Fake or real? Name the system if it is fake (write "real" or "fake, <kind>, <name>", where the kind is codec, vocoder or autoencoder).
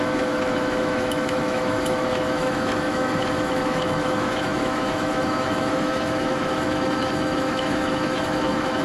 fake, autoencoder, DAC-VAE